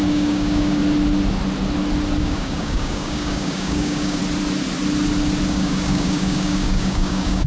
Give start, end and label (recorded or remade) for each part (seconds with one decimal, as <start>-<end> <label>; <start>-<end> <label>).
0.0-0.8 remade; 0.8-2.2 recorded; 2.2-4.2 remade; 4.2-5.5 recorded; 5.5-7.5 remade